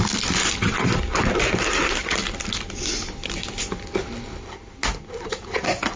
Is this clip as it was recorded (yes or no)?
yes